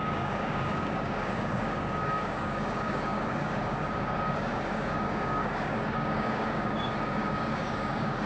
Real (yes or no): no